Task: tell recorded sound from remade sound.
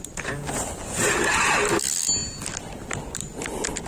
recorded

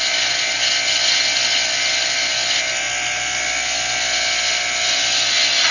recorded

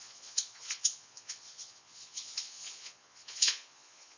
remade